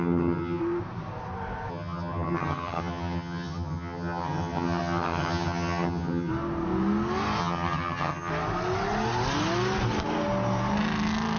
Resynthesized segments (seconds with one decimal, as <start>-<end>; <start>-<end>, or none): 0.0-0.6; 1.7-6.3; 7.4-8.3